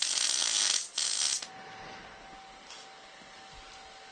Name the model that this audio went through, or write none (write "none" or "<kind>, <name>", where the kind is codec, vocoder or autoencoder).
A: none